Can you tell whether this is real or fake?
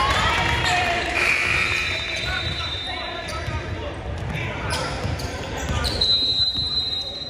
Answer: fake